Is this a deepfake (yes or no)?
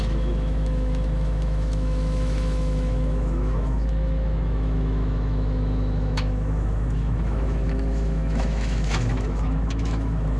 yes